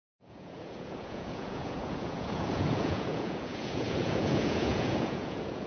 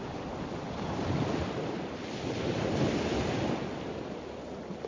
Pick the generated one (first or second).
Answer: first